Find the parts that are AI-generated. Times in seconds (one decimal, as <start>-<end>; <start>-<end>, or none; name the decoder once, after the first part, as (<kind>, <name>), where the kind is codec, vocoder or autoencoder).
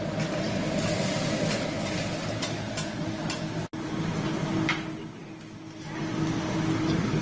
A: none